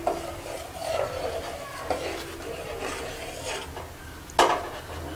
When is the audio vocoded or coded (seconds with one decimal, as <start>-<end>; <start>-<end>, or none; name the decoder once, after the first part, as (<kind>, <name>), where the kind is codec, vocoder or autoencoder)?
none